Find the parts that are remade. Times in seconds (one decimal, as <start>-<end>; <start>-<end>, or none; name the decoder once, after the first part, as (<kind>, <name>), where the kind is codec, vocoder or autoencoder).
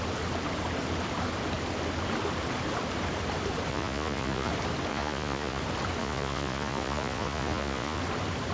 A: 3.7-4.5 (vocoder, Vocos); 4.9-5.6; 6.0-8.0